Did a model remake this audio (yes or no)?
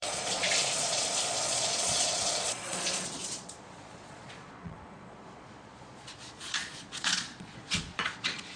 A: yes